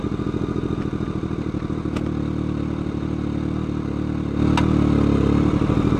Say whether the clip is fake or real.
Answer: real